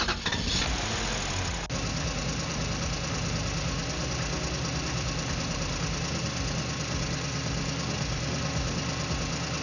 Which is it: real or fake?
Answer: real